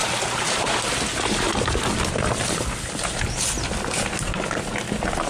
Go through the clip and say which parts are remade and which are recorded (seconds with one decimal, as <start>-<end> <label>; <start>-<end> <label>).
0.0-1.9 recorded; 1.9-4.6 remade; 4.6-5.3 recorded